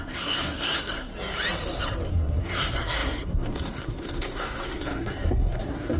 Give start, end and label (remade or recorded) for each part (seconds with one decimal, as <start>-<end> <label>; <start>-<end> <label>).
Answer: 0.0-1.1 remade; 1.1-2.1 recorded; 2.1-6.0 remade